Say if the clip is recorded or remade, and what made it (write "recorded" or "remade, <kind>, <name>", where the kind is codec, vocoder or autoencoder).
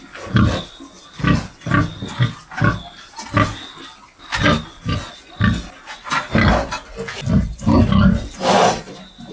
recorded